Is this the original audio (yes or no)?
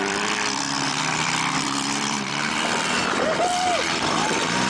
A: no